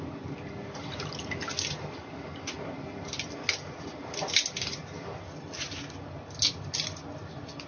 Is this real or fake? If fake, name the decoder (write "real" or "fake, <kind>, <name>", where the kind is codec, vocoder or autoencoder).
real